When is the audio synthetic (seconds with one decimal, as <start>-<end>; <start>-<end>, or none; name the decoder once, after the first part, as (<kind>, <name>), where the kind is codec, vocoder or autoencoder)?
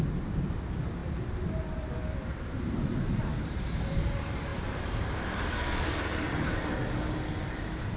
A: 0.0-1.0 (vocoder, BigVGAN v2); 2.2-6.8; 7.5-8.0